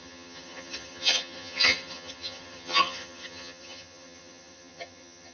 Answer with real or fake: fake